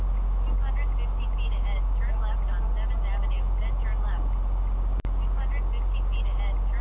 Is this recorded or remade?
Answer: recorded